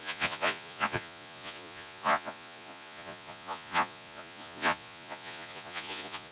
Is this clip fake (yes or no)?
yes